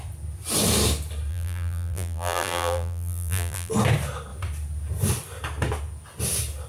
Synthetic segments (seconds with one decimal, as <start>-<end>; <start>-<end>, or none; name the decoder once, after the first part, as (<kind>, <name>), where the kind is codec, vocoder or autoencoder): 1.3-3.7 (vocoder, BigVGAN v2)